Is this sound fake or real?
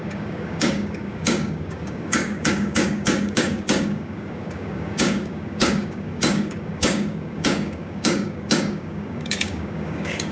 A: fake